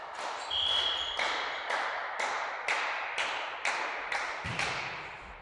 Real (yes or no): yes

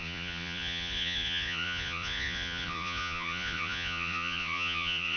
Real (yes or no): no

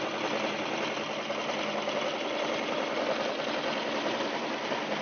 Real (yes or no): yes